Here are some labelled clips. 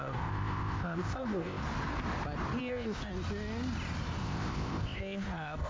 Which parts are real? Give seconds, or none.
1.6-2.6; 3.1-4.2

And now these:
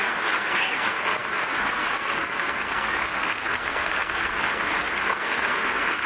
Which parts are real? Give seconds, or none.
none

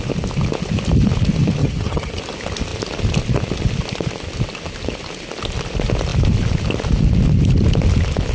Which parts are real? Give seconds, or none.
0.0-1.6; 2.2-8.3

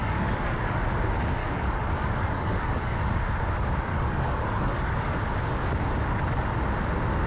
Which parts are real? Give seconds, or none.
0.8-1.4; 3.2-3.9; 5.2-7.3

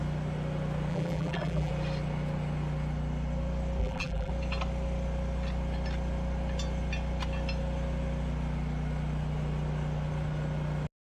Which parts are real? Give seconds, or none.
0.0-0.9; 1.7-3.8; 4.3-11.1

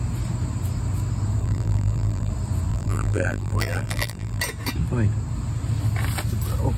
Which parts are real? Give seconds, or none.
0.0-1.4; 2.3-2.7; 4.4-6.8

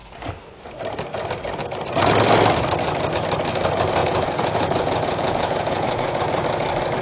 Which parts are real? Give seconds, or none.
0.0-4.0; 6.2-7.0

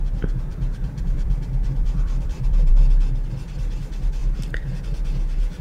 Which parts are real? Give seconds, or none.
0.0-0.5; 2.7-4.2; 4.8-5.6